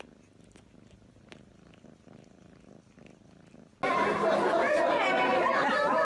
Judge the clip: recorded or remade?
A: recorded